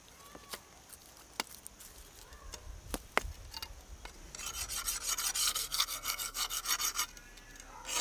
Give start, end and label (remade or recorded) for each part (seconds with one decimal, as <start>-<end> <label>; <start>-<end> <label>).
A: 0.0-5.4 recorded; 5.4-6.6 remade; 6.6-8.0 recorded